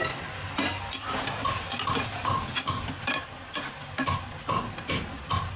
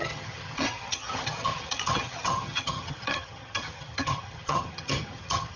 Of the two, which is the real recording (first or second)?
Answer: first